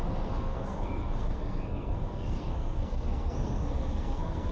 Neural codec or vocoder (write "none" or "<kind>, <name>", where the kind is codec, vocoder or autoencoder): codec, SNAC